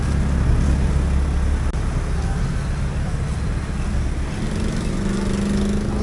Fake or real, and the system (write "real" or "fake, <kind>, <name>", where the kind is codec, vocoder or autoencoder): real